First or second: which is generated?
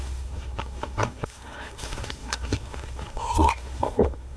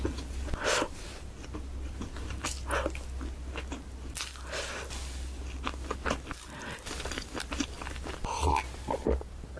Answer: first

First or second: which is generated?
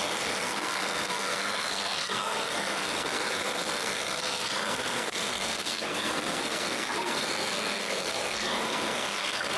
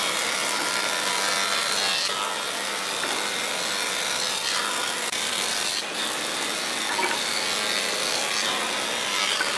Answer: first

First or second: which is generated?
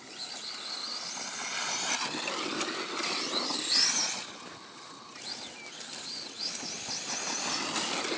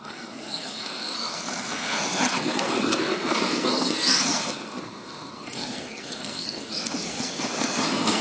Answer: second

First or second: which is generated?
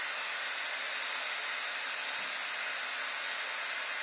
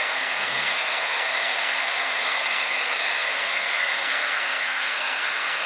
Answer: second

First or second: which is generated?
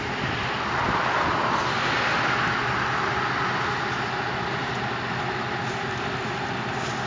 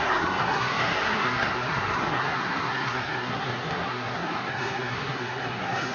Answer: second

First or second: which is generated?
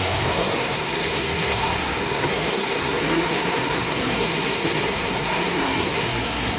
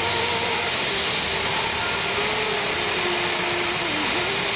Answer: first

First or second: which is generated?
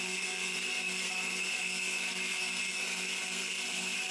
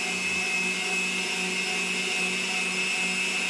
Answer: first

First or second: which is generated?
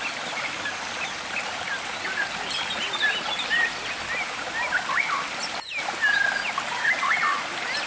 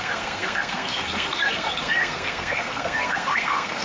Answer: second